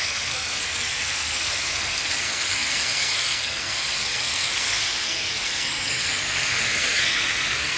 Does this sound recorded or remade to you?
remade